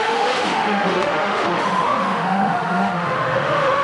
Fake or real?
fake